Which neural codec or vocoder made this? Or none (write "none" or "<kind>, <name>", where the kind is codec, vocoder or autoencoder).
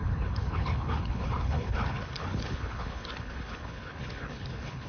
codec, HILCodec